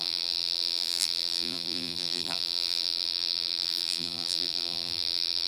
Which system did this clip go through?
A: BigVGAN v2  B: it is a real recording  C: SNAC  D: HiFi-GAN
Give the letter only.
A